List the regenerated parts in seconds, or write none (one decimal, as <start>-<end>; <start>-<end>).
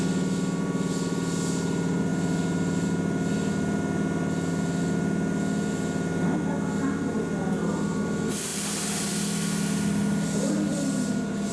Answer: none